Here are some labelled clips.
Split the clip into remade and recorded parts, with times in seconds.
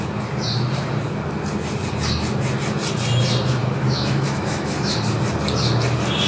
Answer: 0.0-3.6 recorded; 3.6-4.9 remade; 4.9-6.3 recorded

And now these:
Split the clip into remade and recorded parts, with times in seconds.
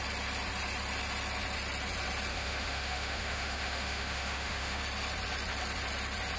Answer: 0.0-2.3 recorded; 2.3-4.8 remade; 4.8-6.4 recorded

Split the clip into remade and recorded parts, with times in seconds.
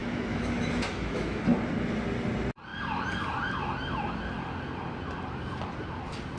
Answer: 0.0-1.4 remade; 1.4-6.4 recorded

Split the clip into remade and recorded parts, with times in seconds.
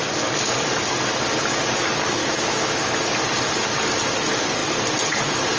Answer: 0.0-2.2 recorded; 2.2-3.0 remade; 3.0-5.6 recorded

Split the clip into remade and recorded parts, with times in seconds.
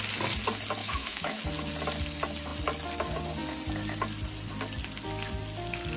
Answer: 0.0-0.8 recorded; 0.8-1.4 remade; 1.4-6.0 recorded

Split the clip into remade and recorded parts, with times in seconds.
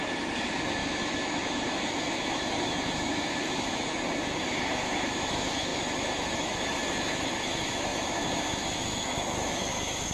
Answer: 0.0-10.1 remade